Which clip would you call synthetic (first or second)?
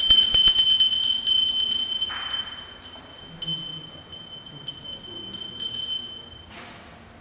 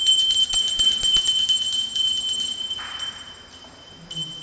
second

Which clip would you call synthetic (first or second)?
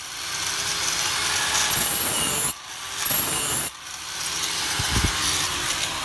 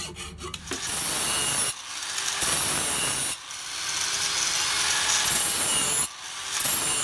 first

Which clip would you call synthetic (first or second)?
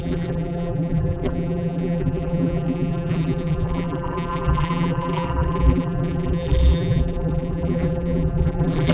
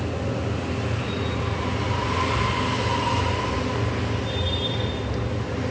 first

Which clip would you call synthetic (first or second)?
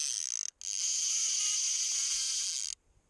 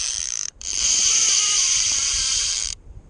second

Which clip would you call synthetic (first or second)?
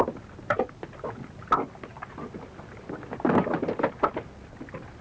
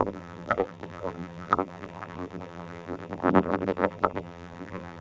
second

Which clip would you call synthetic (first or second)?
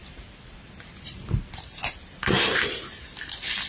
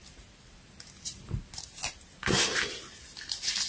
first